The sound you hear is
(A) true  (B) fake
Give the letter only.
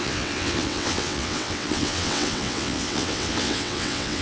B